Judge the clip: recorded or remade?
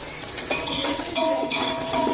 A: remade